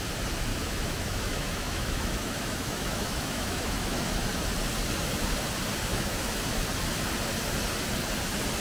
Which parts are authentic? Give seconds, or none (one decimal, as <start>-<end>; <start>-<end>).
0.0-0.5; 4.2-5.9; 6.4-8.6